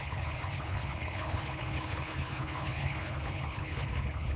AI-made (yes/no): yes